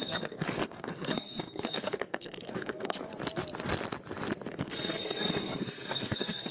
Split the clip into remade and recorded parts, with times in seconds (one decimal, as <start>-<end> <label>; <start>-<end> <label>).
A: 0.0-3.1 remade; 3.1-4.5 recorded; 4.5-6.5 remade